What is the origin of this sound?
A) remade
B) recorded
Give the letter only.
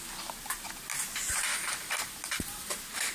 B